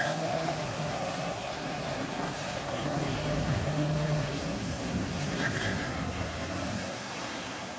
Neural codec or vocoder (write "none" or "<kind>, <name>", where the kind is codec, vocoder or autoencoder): codec, SNAC